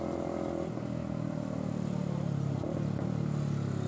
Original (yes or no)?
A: yes